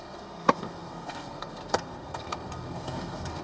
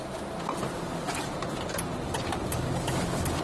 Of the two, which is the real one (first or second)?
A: second